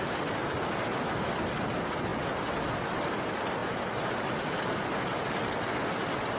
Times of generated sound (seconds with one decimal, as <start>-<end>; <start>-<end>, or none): none